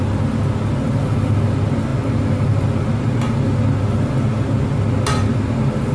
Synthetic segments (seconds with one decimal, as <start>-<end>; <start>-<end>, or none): none